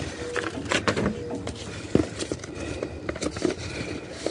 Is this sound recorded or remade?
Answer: recorded